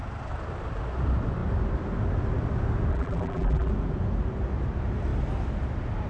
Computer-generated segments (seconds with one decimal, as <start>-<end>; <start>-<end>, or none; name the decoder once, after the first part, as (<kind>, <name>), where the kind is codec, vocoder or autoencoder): 2.9-3.7 (vocoder, BigVGAN v2)